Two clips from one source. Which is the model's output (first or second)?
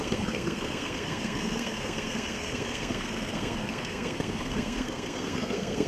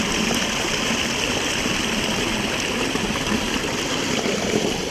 first